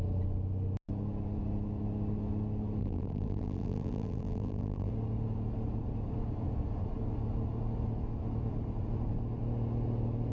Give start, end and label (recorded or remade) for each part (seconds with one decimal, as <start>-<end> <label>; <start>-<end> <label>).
0.0-2.8 recorded; 2.8-4.9 remade; 4.9-10.3 recorded